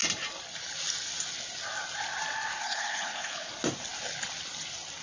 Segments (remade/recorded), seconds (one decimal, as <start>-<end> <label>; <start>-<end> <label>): 0.0-2.6 recorded; 2.6-3.5 remade; 3.5-5.0 recorded